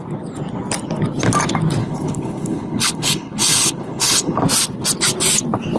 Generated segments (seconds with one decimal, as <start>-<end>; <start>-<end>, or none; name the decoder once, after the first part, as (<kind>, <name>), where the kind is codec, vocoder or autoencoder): 1.8-4.4 (codec, HILCodec)